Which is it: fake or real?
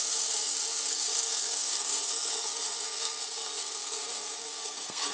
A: fake